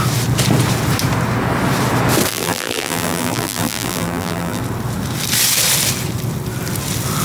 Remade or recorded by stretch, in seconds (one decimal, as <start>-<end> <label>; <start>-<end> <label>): 0.0-2.3 recorded; 2.3-4.6 remade; 4.6-7.2 recorded